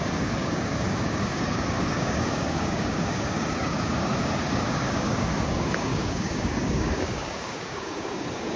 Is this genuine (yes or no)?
no